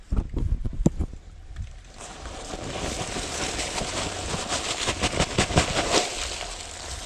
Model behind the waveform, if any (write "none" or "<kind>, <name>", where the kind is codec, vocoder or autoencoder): none